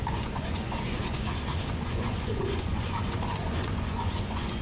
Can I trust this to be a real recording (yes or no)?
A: no